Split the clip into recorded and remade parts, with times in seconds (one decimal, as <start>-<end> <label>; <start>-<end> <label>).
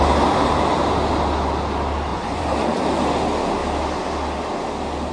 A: 0.0-2.1 recorded; 2.1-2.8 remade; 2.8-5.1 recorded